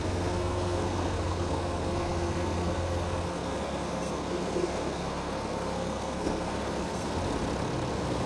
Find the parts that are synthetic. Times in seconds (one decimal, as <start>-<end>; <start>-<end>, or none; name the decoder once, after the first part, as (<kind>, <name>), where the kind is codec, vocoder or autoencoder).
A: 0.0-7.2 (codec, SNAC); 7.9-8.3